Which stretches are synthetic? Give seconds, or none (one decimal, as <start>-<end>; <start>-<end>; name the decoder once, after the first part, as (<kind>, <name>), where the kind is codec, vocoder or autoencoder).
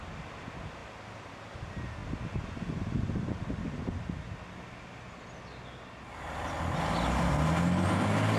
none